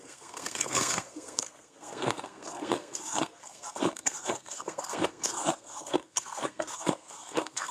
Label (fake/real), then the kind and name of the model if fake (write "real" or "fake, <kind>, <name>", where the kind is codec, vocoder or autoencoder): fake, codec, SNAC